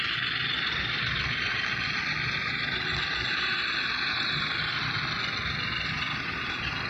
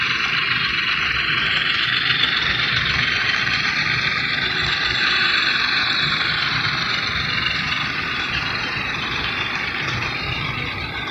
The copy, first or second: second